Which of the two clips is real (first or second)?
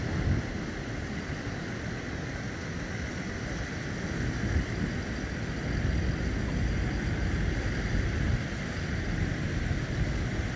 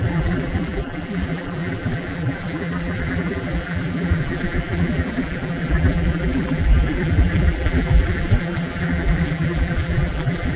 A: first